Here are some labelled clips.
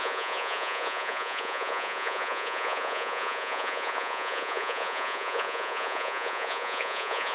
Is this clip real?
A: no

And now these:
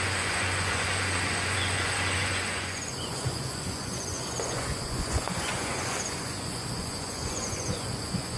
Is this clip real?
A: no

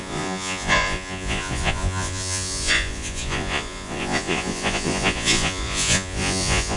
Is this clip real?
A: no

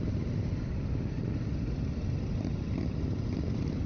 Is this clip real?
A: yes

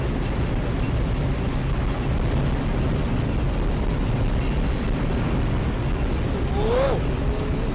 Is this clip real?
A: yes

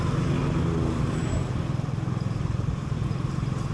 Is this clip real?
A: yes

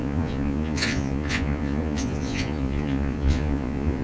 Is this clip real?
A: no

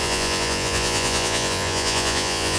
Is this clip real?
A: no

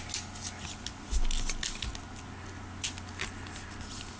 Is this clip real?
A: yes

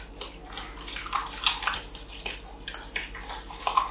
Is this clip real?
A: yes